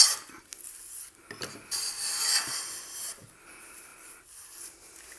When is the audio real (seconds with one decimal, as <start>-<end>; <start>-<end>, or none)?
0.0-5.2